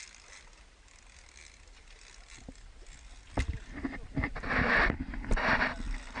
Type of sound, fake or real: real